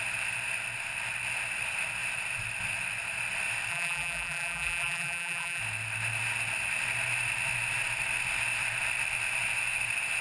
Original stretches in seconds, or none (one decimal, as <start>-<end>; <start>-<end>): 0.0-3.7; 5.6-10.2